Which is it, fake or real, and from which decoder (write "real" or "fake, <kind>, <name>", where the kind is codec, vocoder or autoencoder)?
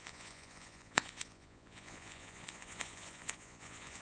fake, vocoder, Vocos